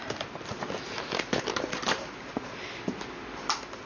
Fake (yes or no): no